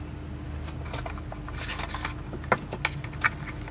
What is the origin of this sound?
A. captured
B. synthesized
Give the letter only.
A